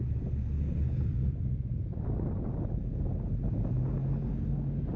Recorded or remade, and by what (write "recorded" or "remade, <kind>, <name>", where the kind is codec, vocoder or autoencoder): recorded